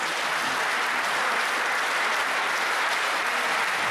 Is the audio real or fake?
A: real